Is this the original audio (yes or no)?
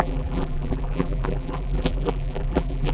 no